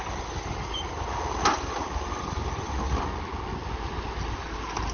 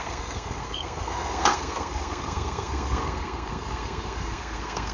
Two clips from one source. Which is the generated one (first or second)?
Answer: second